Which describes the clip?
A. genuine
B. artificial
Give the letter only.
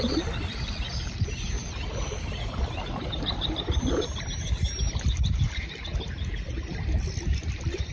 B